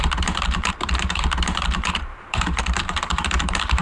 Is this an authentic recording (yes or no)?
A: no